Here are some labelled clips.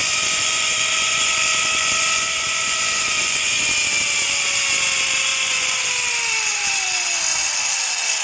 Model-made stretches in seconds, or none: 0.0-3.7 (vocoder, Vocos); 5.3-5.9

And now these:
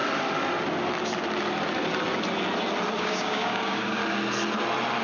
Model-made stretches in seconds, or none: 3.0-4.0 (codec, DAC)

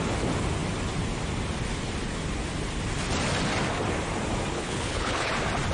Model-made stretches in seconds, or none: 4.5-5.3 (codec, HILCodec)

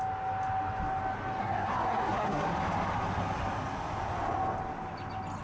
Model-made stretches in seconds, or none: 1.4-2.5 (codec, SNAC)

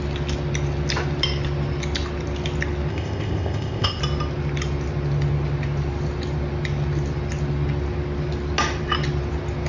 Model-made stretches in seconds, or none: 2.9-4.0 (codec, ZipCodec)

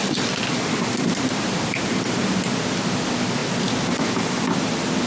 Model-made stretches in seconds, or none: 0.0-2.4 (vocoder, BigVGAN v2)